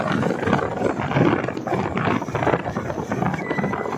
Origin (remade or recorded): recorded